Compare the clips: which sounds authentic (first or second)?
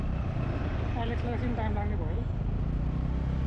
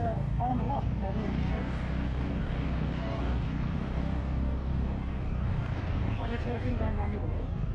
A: first